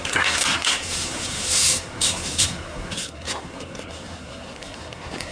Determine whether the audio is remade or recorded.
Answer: remade